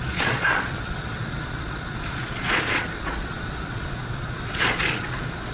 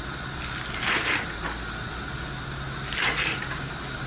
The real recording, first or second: second